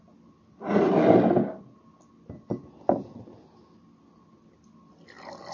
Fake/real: real